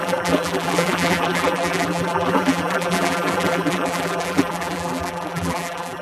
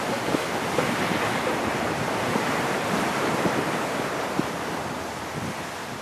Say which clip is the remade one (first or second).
first